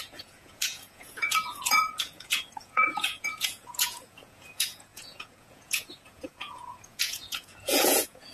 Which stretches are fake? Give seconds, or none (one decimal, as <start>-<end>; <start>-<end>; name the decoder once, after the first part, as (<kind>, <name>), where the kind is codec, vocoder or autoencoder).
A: 0.0-8.3 (vocoder, Vocos)

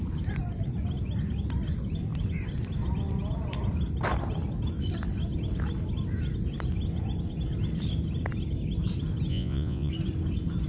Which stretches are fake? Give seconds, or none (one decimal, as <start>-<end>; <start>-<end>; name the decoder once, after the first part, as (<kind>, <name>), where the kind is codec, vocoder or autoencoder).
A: 9.3-9.9 (vocoder, Vocos)

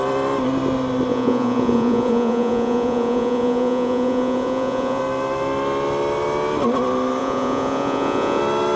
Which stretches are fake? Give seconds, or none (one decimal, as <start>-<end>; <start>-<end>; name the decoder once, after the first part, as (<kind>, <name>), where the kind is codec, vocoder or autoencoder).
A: 1.1-5.0 (vocoder, Vocos); 7.2-8.4

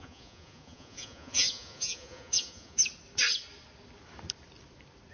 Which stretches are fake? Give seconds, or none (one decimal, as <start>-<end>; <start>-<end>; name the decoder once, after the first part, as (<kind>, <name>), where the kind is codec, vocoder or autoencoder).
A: 0.0-2.8 (vocoder, Vocos)

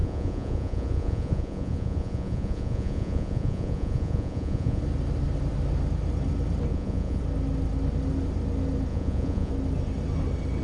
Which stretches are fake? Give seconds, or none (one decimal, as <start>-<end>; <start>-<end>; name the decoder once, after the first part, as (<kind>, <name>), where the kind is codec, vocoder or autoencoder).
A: 0.0-4.8 (vocoder, Vocos); 6.7-7.2; 8.9-9.5

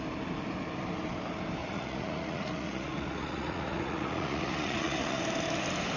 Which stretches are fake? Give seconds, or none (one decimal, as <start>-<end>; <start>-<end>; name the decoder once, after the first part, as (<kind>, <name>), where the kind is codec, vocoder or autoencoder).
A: 1.6-5.2 (vocoder, Vocos)

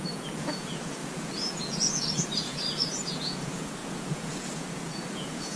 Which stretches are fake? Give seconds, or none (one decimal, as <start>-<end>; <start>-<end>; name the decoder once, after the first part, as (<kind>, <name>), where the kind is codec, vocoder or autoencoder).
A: 0.0-5.6 (vocoder, Vocos)

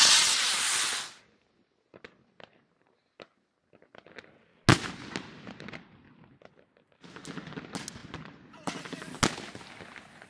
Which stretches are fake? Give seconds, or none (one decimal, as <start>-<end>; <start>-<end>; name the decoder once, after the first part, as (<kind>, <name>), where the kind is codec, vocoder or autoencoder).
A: none